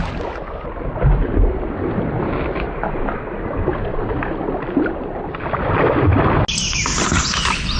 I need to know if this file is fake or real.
real